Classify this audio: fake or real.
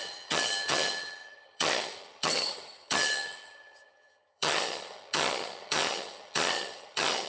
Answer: fake